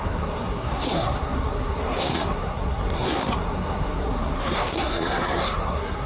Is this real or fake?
fake